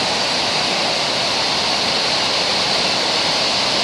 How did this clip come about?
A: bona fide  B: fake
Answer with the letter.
A